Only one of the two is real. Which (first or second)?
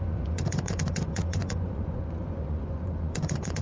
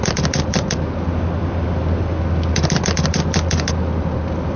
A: second